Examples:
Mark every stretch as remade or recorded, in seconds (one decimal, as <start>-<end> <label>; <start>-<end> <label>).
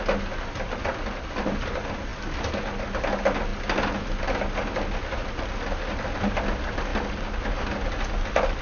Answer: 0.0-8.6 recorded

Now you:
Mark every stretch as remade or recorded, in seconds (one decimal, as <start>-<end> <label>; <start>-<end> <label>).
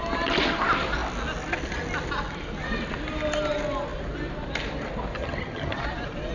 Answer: 0.0-5.2 recorded; 5.2-5.8 remade; 5.8-6.3 recorded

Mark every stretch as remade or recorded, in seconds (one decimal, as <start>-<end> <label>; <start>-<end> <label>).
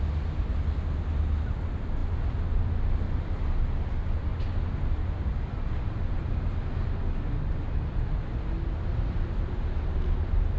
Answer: 0.0-10.6 recorded